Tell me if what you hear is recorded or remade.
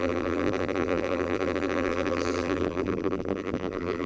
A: remade